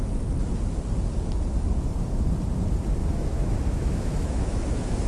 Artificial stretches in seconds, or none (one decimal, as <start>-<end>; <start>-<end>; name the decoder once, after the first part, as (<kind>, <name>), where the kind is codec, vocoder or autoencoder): 3.0-5.1 (autoencoder, DAC-VAE)